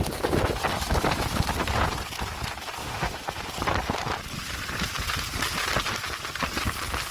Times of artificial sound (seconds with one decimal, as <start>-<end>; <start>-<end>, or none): 2.8-3.4

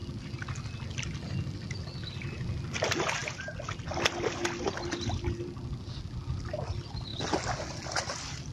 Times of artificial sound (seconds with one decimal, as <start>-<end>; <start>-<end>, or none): none

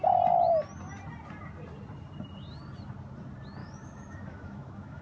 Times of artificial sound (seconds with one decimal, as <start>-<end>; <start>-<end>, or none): 3.6-5.0

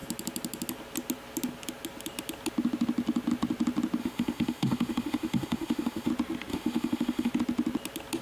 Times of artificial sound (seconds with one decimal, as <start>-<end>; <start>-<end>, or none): 4.0-6.1; 6.5-7.3

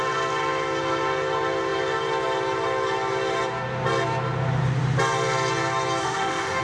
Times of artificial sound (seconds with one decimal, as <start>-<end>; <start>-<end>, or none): 6.0-6.6

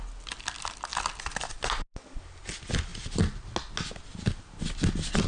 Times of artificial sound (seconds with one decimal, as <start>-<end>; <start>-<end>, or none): none